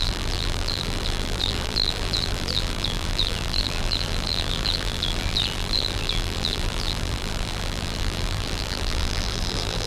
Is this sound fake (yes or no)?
yes